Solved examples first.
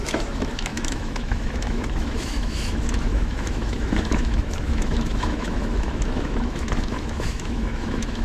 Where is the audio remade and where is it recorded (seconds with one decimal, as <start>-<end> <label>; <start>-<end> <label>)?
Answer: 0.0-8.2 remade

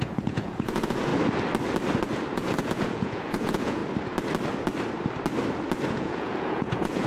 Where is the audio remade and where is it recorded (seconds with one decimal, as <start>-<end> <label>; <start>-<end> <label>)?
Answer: 0.0-1.1 remade; 1.1-2.3 recorded; 2.3-3.8 remade; 3.8-5.9 recorded; 5.9-7.1 remade

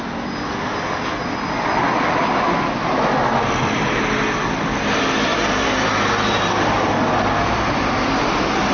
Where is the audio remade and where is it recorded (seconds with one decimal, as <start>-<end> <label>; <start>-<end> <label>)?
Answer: 0.0-5.3 recorded; 5.3-6.1 remade; 6.1-8.7 recorded

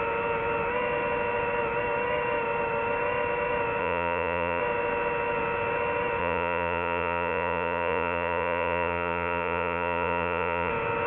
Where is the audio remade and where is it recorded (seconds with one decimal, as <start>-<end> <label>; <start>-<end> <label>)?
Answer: 0.0-3.8 recorded; 3.8-4.6 remade; 4.6-6.2 recorded; 6.2-10.7 remade; 10.7-11.1 recorded

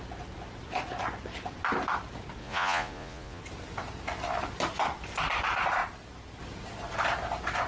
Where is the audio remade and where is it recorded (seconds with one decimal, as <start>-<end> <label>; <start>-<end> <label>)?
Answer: 0.0-2.4 recorded; 2.4-3.4 remade; 3.4-7.7 recorded

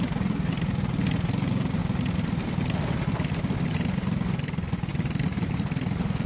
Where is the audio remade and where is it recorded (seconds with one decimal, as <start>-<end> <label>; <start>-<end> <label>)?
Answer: 0.0-6.3 recorded

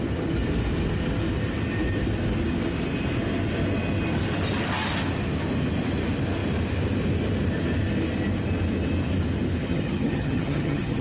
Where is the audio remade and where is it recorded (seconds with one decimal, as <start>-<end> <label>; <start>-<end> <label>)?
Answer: 0.0-9.6 recorded; 9.6-11.0 remade